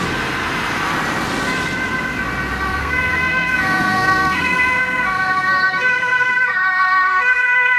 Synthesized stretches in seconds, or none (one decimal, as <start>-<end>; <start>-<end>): 2.7-7.8